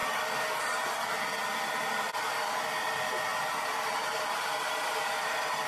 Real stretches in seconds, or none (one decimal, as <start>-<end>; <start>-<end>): 0.0-5.7